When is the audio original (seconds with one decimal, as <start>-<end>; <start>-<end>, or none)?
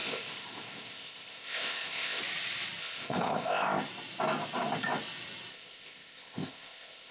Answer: 2.2-2.8; 3.8-5.5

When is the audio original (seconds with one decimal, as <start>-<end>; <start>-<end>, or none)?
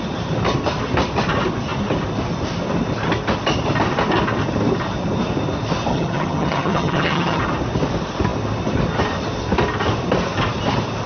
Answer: 0.0-5.9; 7.4-11.1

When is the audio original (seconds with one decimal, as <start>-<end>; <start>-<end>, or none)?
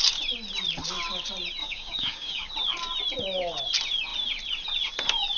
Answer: 0.0-1.6; 2.5-5.4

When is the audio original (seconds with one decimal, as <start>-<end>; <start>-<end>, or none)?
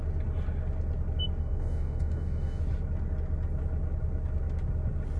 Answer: 0.0-1.4; 2.6-5.2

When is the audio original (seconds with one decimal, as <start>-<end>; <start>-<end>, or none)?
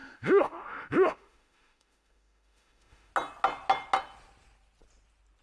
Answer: 3.1-5.4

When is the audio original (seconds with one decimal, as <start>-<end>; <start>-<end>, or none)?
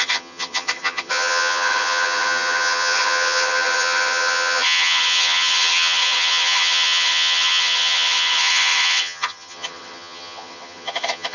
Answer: none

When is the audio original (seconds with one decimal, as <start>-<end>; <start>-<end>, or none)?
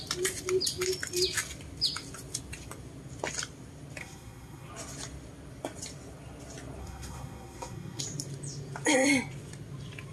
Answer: 0.0-4.0; 4.7-6.8; 8.0-10.1